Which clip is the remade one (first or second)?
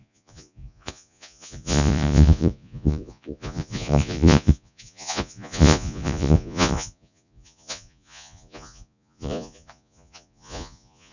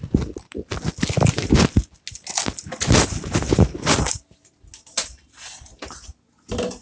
first